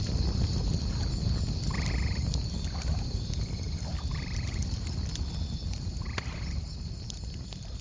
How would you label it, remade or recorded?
recorded